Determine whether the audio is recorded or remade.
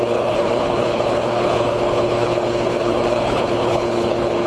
remade